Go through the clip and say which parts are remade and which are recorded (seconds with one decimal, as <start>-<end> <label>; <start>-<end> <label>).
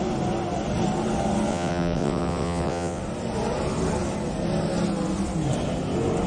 0.0-1.5 recorded; 1.5-3.0 remade; 3.0-6.3 recorded